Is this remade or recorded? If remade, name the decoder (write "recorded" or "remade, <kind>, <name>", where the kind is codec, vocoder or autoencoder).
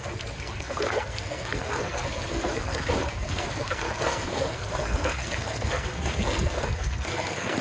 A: remade, codec, SNAC